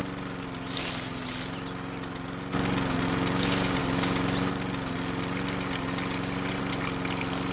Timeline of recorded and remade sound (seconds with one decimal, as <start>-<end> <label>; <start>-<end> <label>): 0.0-7.5 recorded